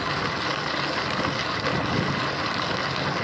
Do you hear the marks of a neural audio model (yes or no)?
no